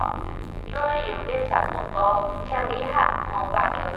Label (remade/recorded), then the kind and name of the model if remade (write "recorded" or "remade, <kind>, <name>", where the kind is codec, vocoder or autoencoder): remade, vocoder, BigVGAN v2